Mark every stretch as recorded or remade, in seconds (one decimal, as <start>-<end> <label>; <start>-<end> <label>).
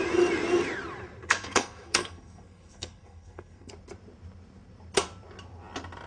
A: 0.0-1.2 recorded; 1.2-3.7 remade; 3.7-6.1 recorded